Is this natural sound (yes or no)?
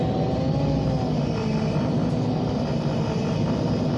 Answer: yes